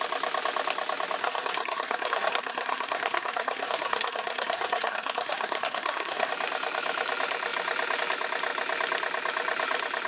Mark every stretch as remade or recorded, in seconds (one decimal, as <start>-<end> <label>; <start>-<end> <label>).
0.0-1.2 recorded; 1.2-6.3 remade; 6.3-10.1 recorded